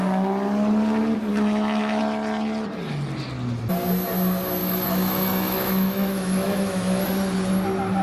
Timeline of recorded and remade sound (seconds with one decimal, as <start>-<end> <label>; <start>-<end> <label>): 0.0-1.3 recorded; 1.3-2.0 remade; 2.0-4.6 recorded; 4.6-7.0 remade; 7.0-8.0 recorded